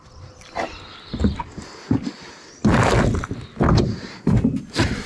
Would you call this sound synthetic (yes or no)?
no